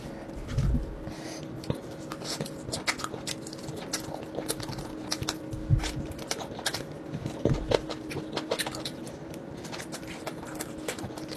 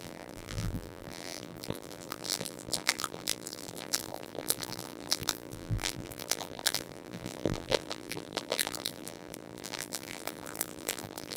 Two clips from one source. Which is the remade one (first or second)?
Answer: second